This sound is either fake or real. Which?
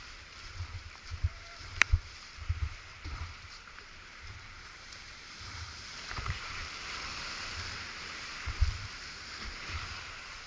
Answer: fake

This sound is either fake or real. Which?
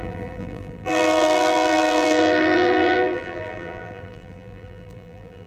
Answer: fake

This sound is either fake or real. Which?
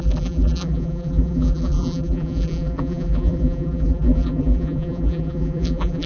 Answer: fake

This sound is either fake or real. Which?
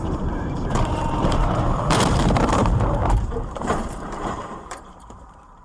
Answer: fake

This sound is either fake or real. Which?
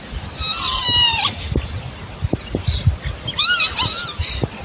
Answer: real